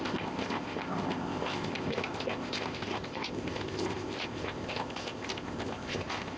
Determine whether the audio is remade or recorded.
remade